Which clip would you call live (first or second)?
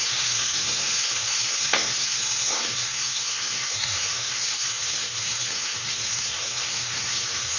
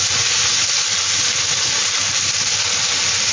second